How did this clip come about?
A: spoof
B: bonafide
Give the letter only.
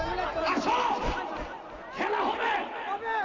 B